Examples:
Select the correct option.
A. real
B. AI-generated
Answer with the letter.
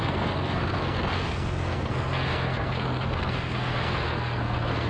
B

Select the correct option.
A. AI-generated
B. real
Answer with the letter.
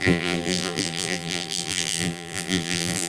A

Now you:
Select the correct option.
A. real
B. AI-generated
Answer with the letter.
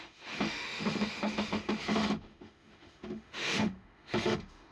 B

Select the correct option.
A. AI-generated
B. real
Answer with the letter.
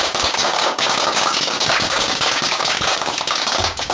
A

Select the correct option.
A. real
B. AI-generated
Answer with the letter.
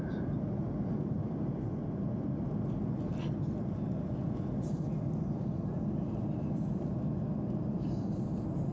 A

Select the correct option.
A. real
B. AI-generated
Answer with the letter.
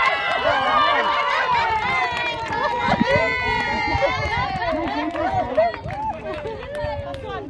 B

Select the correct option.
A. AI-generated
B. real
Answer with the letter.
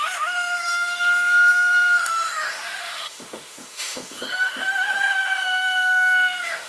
A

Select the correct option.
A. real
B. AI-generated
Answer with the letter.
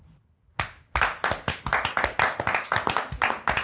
A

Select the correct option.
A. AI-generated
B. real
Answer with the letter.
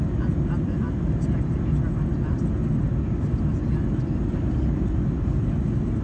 B